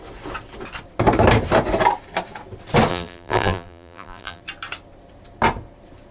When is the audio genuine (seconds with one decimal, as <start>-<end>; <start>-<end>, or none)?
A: 0.0-2.9; 4.4-6.1